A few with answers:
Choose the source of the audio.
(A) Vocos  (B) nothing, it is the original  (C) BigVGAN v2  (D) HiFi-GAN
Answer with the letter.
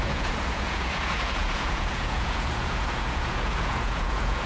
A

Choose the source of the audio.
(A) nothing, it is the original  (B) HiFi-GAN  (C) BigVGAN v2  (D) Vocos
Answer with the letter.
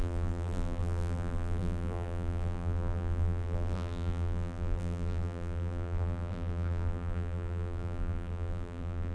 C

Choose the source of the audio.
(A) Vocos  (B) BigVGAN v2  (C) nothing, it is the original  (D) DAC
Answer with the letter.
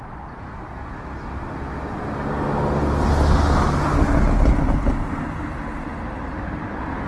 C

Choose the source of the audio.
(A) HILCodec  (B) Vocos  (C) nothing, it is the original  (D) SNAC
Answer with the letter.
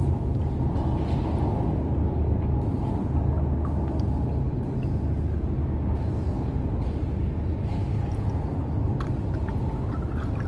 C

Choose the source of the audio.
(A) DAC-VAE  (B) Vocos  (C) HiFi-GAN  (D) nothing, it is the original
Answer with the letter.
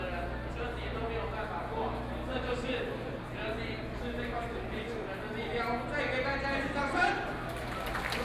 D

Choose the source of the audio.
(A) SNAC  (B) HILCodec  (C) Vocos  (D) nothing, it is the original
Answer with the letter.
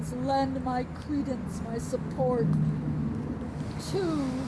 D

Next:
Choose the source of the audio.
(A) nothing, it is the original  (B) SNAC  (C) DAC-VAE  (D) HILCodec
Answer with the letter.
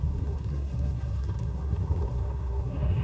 B